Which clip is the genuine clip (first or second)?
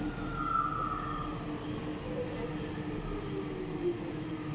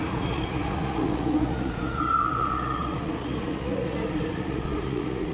first